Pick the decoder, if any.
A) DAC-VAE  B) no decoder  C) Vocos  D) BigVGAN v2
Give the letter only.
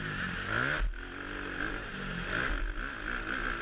B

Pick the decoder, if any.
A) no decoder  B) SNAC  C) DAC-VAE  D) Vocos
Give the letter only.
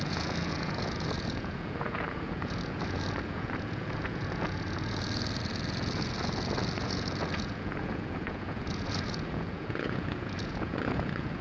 D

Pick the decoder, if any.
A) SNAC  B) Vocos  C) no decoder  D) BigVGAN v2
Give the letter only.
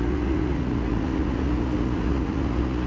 B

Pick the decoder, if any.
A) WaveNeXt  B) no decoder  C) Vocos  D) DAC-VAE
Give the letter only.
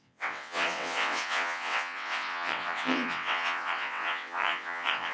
A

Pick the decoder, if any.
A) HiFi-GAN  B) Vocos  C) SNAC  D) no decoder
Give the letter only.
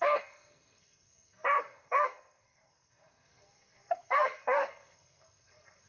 C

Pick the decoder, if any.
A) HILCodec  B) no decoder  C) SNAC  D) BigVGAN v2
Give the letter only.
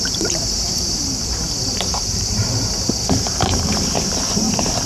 D